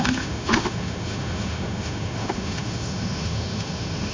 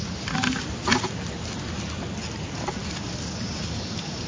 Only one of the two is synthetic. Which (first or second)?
first